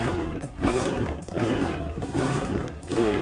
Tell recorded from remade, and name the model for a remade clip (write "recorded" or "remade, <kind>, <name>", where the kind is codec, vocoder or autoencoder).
remade, codec, SNAC